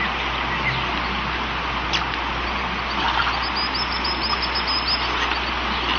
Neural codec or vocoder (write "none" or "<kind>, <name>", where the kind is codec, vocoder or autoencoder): none